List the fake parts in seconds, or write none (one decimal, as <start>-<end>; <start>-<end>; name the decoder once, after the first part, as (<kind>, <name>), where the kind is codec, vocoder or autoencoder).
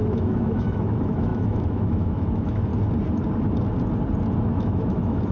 0.0-2.7 (autoencoder, DAC-VAE); 4.4-5.3